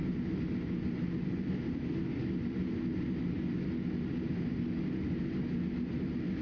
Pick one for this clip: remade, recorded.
recorded